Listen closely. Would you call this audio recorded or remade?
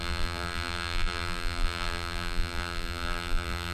remade